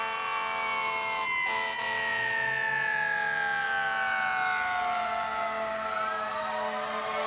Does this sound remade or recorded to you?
recorded